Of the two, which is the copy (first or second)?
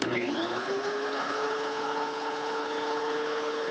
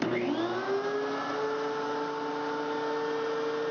first